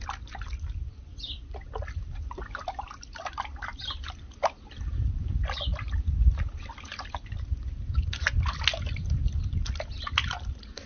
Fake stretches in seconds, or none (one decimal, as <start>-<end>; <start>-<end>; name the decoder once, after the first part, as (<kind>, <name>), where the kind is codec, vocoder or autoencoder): none